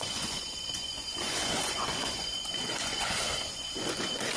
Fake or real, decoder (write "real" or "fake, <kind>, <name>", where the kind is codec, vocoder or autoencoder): fake, vocoder, Vocos